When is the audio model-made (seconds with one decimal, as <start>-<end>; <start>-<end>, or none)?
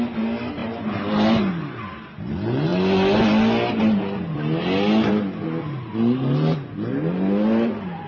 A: none